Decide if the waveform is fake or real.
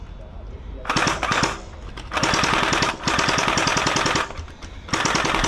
real